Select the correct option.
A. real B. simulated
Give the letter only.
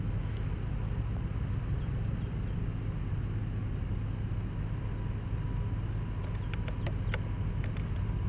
A